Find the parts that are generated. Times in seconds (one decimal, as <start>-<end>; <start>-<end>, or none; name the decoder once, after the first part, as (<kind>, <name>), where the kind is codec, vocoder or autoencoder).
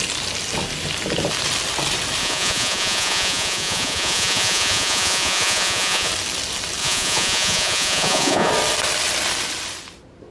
2.2-6.1 (vocoder, Vocos); 6.8-8.5